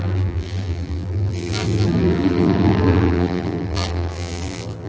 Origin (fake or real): fake